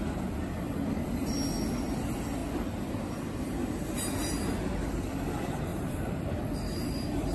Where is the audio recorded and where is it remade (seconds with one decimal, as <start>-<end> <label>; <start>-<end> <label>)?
0.0-5.7 recorded; 5.7-6.3 remade; 6.3-7.3 recorded